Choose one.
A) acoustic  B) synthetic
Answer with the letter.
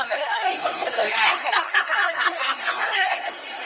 B